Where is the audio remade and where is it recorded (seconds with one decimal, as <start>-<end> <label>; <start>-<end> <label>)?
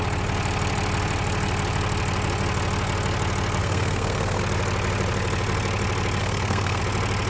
0.0-3.6 recorded; 3.6-4.4 remade; 4.4-6.2 recorded; 6.2-6.8 remade; 6.8-7.3 recorded